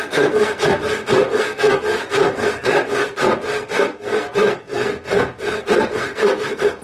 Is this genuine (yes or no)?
no